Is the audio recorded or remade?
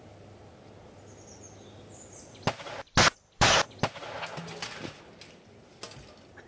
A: recorded